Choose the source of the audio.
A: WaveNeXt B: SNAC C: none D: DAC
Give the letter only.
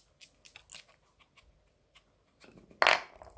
C